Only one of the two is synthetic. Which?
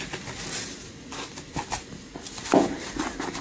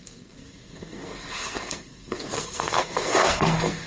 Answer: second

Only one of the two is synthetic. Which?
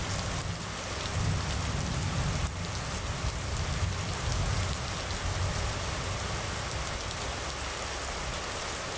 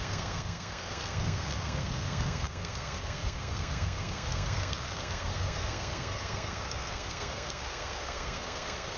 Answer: second